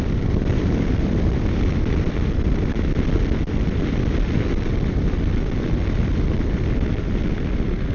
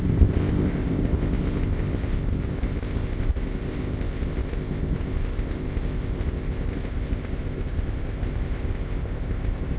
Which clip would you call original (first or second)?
first